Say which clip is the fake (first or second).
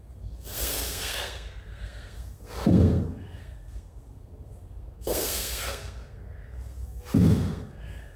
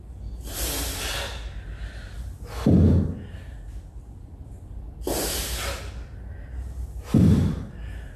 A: first